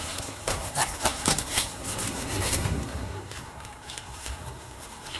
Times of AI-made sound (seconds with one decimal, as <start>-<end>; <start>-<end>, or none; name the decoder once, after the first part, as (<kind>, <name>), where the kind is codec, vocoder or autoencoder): 0.0-5.2 (codec, SNAC)